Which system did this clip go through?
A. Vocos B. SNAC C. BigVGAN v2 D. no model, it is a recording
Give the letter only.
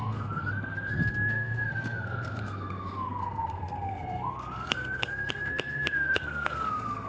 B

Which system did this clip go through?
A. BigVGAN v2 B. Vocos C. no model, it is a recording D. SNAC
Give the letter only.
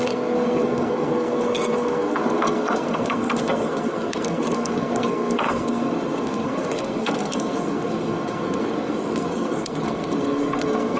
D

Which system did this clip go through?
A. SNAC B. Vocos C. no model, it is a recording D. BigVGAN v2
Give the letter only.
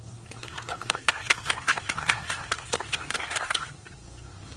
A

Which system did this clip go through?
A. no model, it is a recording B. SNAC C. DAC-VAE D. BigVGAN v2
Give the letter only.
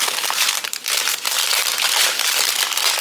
A